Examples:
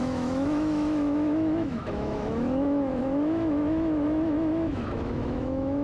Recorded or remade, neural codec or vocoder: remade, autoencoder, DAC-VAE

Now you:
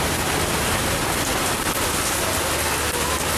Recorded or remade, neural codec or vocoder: recorded